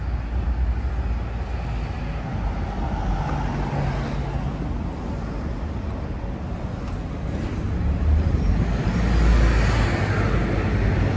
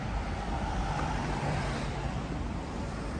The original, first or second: first